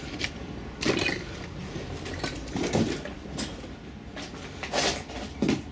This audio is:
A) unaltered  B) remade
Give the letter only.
A